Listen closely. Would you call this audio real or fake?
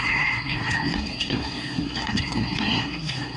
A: fake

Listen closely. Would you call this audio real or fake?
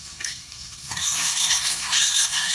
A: fake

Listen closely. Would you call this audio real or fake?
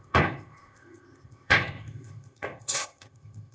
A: fake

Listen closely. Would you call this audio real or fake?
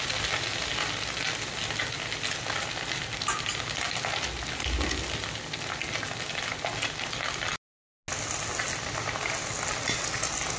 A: real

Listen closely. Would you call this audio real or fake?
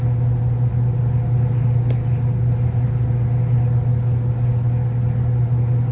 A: real